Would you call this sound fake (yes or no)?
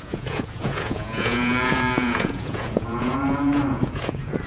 yes